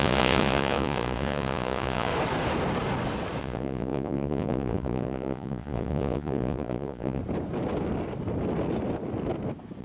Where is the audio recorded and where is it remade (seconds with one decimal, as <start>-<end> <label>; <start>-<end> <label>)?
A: 0.0-2.1 remade; 2.1-3.4 recorded; 3.4-7.2 remade; 7.2-9.8 recorded

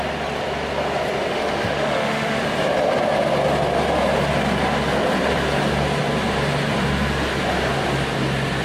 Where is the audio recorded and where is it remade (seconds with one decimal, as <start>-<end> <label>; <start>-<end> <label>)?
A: 0.0-1.3 recorded; 1.3-2.4 remade; 2.4-8.6 recorded

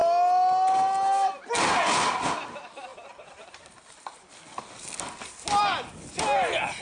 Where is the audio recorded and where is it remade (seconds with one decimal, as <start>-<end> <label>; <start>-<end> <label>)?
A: 0.0-6.8 recorded

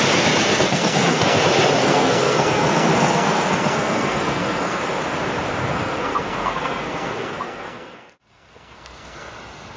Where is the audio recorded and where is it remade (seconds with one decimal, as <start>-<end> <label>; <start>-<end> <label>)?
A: 0.0-0.4 recorded; 0.4-1.4 remade; 1.4-1.8 recorded; 1.8-4.8 remade; 4.8-5.6 recorded; 5.6-9.3 remade; 9.3-9.8 recorded

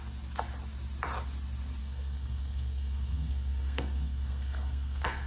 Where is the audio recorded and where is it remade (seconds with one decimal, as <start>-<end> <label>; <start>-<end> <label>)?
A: 0.0-1.8 recorded; 1.8-5.3 remade

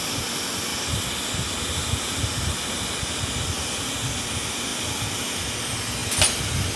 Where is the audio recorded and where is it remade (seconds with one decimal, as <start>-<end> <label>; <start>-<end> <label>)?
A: 0.0-6.8 recorded

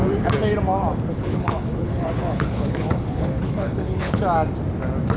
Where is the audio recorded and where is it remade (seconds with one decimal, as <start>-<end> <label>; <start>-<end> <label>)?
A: 0.0-1.1 recorded; 1.1-4.2 remade; 4.2-5.2 recorded